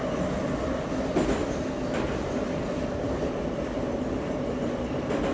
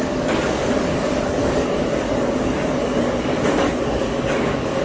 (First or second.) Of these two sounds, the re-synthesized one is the second